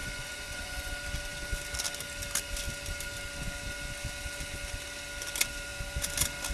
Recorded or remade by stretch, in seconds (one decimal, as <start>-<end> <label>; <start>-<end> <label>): 0.0-0.9 remade; 0.9-6.5 recorded